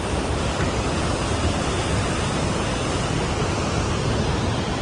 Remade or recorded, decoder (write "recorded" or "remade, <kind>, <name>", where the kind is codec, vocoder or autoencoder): recorded